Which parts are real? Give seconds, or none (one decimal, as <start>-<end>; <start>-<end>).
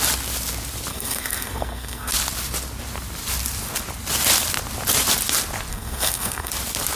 0.0-0.9; 2.1-5.7; 6.5-7.0